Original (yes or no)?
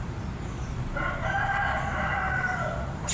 no